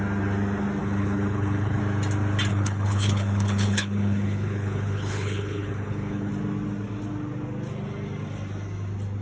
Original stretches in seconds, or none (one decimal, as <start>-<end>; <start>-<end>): 0.0-0.8; 1.8-2.5; 6.3-9.2

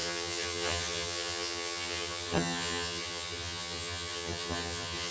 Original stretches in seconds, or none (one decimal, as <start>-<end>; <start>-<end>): none

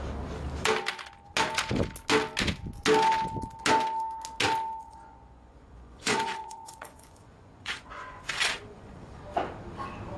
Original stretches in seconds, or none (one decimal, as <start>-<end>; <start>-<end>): 0.0-4.8; 9.2-10.2

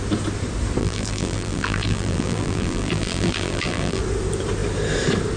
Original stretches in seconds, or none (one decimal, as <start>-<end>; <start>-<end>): 0.0-0.8; 4.0-5.4